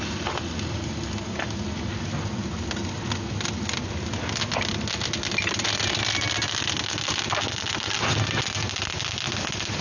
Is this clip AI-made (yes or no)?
no